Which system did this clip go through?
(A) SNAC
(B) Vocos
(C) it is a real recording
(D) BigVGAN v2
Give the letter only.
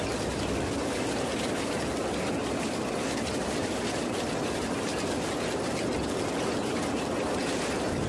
C